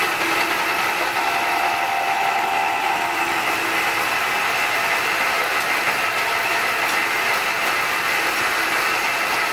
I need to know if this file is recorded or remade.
recorded